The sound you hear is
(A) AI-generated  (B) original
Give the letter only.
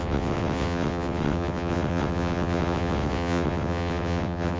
A